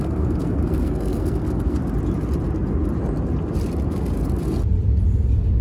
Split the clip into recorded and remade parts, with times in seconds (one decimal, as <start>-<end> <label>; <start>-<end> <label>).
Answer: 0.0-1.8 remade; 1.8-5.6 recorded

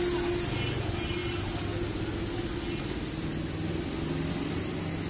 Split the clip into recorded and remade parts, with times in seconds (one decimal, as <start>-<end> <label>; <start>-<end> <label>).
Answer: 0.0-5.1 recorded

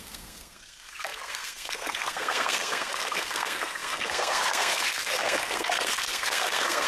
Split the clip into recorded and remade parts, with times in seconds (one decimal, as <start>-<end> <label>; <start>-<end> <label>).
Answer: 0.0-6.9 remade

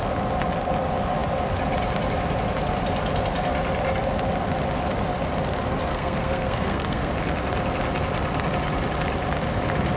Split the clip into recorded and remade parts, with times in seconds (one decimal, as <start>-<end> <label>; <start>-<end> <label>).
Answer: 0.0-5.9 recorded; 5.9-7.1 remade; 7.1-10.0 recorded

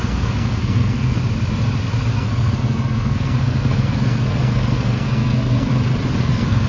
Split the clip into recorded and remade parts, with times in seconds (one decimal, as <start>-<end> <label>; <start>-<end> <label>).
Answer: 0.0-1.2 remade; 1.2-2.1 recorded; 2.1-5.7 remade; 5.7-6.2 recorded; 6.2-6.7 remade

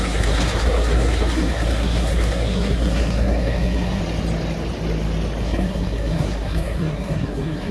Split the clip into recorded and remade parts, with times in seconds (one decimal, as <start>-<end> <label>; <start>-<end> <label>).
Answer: 0.0-4.0 remade; 4.0-5.4 recorded; 5.4-7.7 remade